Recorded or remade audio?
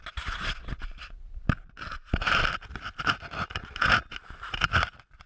recorded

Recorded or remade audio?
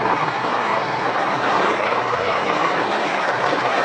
remade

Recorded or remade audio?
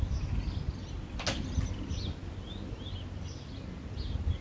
recorded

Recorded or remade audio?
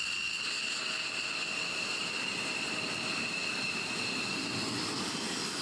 recorded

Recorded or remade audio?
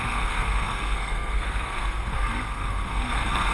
remade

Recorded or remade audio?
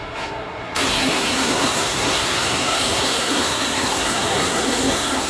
remade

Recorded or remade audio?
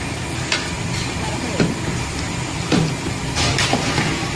recorded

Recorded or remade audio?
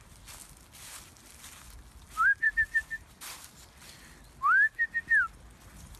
recorded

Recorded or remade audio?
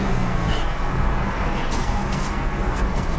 remade